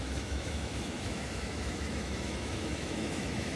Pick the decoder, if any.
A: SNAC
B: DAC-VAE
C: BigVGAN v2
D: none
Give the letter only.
B